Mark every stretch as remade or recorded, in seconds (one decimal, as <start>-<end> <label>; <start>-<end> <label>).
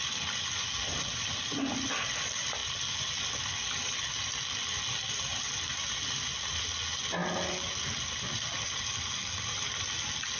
0.0-10.4 recorded